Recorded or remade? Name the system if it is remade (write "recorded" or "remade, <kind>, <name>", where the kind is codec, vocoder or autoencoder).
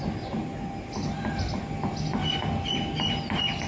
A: recorded